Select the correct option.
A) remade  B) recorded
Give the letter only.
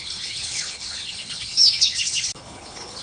A